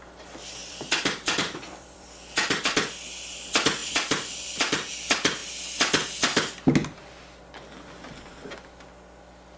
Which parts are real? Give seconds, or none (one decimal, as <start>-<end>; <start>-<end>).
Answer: 0.0-0.6; 2.7-3.8; 4.9-9.6